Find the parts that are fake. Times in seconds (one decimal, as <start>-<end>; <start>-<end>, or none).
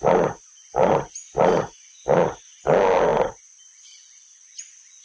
none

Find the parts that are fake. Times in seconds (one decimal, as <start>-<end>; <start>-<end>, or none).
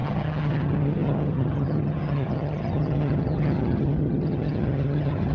0.0-5.3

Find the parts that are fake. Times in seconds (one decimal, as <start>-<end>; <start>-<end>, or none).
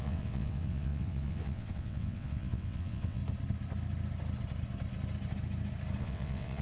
0.0-3.2; 6.0-6.6